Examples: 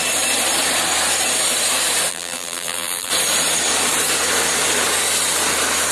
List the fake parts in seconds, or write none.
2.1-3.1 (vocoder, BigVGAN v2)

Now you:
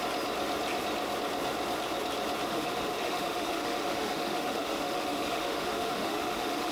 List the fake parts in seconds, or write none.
2.5-6.7 (autoencoder, DAC-VAE)

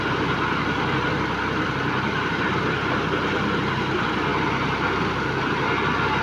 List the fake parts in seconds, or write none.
none

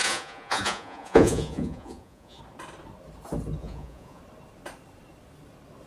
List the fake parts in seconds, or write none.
0.0-2.4 (vocoder, Vocos); 3.6-4.2